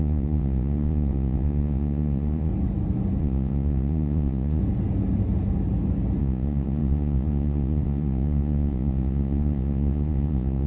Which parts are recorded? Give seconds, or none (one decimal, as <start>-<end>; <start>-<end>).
2.5-3.2; 4.6-6.2